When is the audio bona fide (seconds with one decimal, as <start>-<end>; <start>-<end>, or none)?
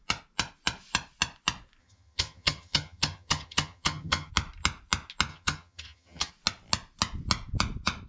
0.0-1.8; 4.3-5.3; 6.3-8.1